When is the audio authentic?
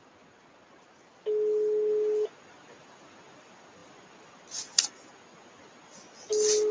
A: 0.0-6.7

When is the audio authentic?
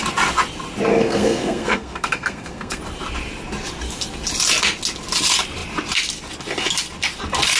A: 0.0-0.9; 2.8-7.6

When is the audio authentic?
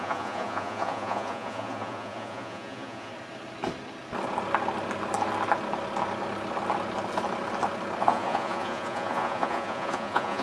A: 3.1-8.0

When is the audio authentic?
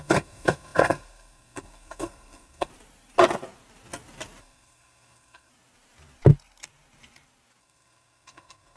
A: 2.7-4.4; 5.5-7.6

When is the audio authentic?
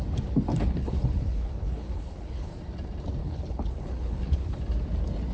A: 0.0-0.5; 2.5-3.2; 4.6-5.3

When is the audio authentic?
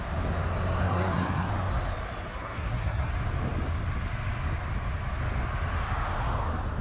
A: 0.0-0.8; 1.5-2.3; 3.1-6.8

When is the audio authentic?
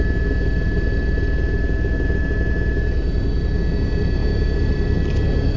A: 0.0-5.6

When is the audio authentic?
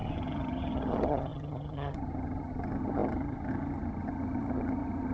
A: none